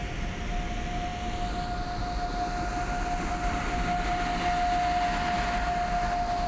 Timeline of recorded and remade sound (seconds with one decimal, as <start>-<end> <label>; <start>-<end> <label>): 0.0-6.5 recorded